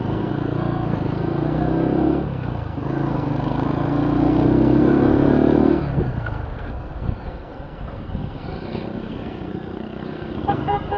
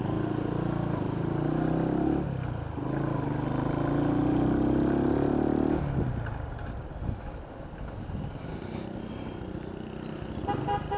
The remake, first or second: first